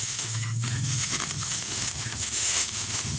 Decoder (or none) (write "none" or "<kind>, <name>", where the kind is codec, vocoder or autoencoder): autoencoder, DAC-VAE